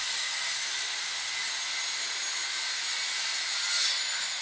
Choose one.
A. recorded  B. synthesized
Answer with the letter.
A